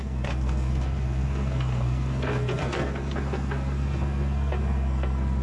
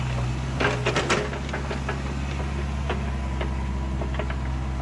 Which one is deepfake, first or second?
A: first